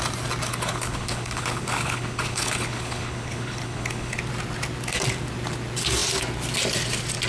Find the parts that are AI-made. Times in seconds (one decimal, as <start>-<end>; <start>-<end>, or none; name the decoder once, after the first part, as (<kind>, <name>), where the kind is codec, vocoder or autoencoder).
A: 0.5-4.1 (codec, HILCodec)